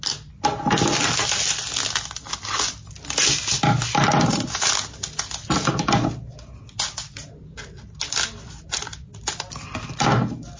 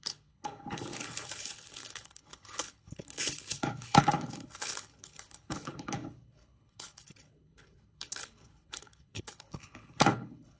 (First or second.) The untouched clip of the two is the first